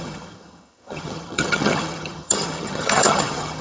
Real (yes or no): no